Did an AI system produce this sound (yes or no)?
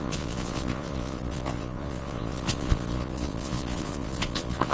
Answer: yes